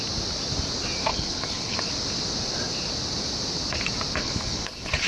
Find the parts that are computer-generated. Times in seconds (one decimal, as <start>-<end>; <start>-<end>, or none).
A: 1.1-1.9; 4.2-5.1